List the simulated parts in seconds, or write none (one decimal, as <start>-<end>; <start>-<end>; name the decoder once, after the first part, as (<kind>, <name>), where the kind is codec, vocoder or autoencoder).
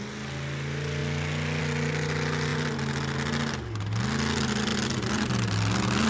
none